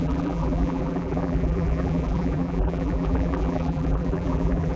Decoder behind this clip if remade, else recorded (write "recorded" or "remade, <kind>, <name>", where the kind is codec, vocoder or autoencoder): remade, vocoder, BigVGAN v2